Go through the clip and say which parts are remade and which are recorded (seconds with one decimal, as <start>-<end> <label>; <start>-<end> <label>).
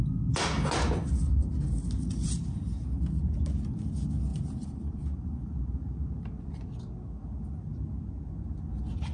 0.0-4.3 recorded; 4.3-6.7 remade; 6.7-9.1 recorded